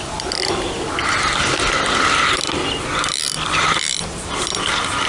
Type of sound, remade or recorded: recorded